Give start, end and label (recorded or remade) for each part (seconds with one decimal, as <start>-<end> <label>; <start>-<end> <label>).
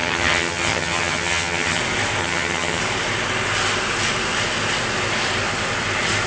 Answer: 0.0-1.8 remade; 1.8-2.2 recorded; 2.2-2.8 remade; 2.8-6.3 recorded